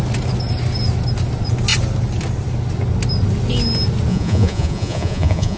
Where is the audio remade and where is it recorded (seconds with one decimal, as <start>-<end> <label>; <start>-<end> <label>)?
0.0-4.1 recorded; 4.1-5.6 remade